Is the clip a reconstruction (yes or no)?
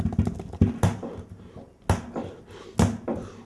no